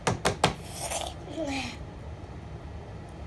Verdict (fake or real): real